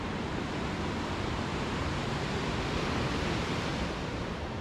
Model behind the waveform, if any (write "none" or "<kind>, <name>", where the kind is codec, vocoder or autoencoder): none